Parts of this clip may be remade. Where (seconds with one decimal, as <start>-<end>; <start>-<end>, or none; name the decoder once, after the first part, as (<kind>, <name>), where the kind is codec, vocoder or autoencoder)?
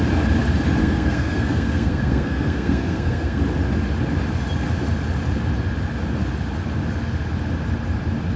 0.8-3.4 (codec, SNAC)